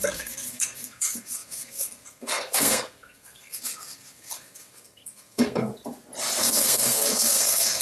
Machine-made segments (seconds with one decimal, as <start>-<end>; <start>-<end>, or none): 0.0-5.7; 6.4-7.8